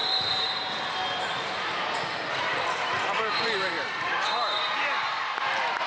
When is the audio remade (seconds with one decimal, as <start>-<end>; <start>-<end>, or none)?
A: 0.0-0.7; 2.5-4.6